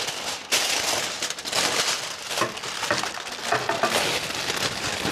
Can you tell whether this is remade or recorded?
recorded